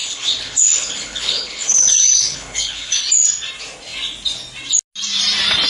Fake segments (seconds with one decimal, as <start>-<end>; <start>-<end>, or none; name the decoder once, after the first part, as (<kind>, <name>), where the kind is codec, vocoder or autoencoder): 0.0-3.0 (codec, HILCodec)